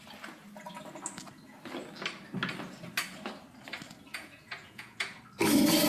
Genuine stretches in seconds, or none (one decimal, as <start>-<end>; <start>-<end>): 0.0-4.1; 5.2-5.9